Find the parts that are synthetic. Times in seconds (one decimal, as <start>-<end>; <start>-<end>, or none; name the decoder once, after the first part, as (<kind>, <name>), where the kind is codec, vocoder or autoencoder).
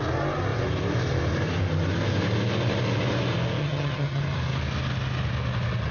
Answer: 3.6-4.2 (vocoder, HiFi-GAN)